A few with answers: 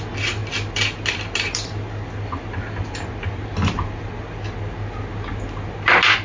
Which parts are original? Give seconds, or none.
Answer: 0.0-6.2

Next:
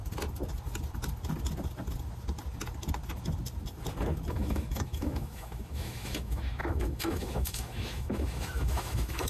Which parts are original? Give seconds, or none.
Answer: 0.0-4.3